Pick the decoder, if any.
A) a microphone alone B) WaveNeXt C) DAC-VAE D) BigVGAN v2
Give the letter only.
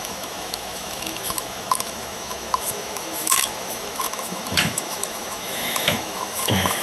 C